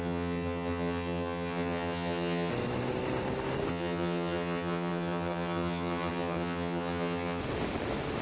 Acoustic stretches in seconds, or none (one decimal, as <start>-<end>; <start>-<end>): 2.5-3.7; 7.4-8.2